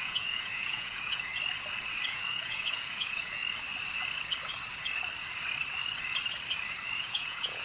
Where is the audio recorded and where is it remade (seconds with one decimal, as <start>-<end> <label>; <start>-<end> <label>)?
0.0-1.3 remade; 1.3-2.0 recorded; 2.0-3.4 remade; 3.4-7.0 recorded; 7.0-7.6 remade